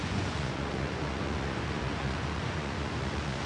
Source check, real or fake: fake